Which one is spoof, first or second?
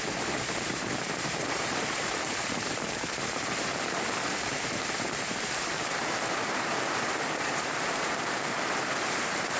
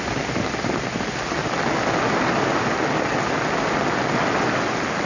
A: first